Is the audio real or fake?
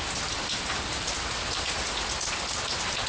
real